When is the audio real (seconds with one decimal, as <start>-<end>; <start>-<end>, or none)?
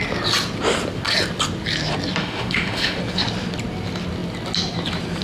0.0-2.2; 3.0-5.2